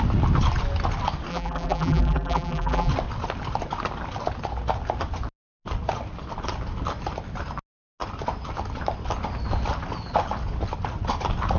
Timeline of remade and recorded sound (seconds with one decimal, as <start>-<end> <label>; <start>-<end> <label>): 0.0-1.3 recorded; 1.3-2.9 remade; 2.9-11.6 recorded